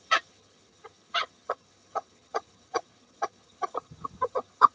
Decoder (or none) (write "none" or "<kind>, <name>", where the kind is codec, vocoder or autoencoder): vocoder, HiFi-GAN